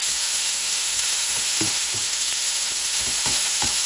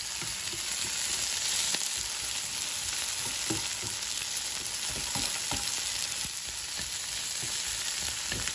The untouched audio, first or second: second